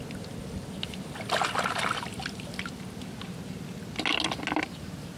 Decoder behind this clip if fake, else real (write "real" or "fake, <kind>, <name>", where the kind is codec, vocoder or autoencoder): real